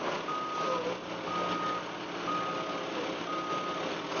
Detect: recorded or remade recorded